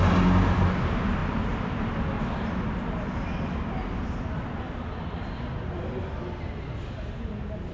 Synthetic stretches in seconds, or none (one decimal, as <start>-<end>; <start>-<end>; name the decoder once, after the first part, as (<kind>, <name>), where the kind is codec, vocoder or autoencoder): none